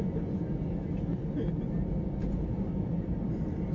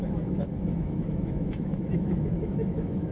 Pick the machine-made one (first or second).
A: second